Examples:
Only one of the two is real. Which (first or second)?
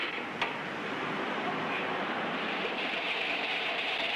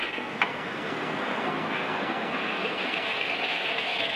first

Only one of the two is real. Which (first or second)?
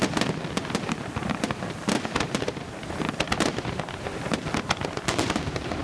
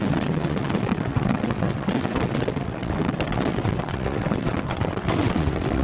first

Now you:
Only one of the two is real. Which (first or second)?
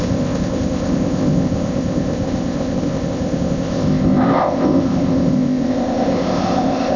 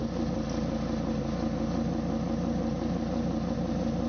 second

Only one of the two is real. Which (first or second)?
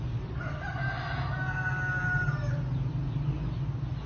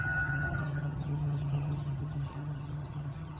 first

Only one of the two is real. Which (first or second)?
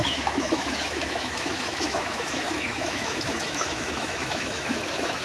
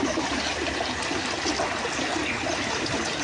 second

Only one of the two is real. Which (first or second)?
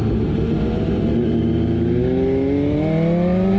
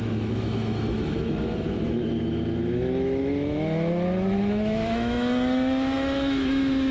first